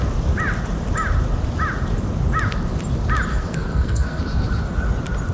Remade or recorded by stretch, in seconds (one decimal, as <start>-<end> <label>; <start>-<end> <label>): 0.0-3.3 recorded; 3.3-4.2 remade; 4.2-5.3 recorded